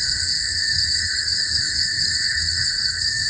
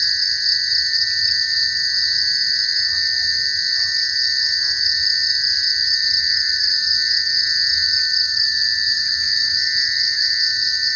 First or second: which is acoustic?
second